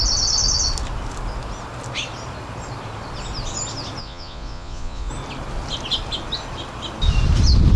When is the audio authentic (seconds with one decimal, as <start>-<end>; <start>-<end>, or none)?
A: 0.0-4.0; 5.1-7.8